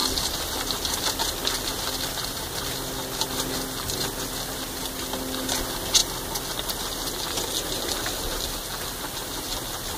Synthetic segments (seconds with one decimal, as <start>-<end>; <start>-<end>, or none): none